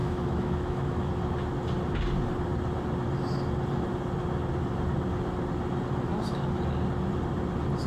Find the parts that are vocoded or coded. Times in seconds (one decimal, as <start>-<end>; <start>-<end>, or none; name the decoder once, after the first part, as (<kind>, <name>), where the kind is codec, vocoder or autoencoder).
0.0-1.1 (autoencoder, DAC-VAE)